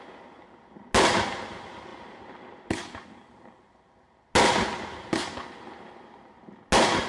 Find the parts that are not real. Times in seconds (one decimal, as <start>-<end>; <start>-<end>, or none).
none